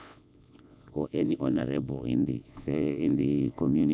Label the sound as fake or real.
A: fake